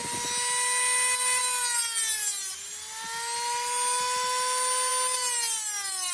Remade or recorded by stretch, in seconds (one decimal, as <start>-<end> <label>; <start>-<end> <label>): 0.0-6.1 recorded